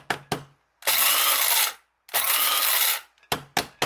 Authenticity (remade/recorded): recorded